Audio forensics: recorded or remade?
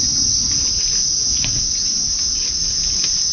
recorded